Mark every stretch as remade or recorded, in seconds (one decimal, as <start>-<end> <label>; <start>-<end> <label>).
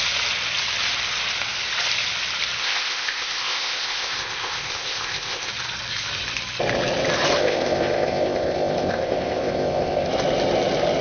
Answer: 0.0-2.6 recorded; 2.6-5.5 remade; 5.5-7.4 recorded; 7.4-10.1 remade; 10.1-11.0 recorded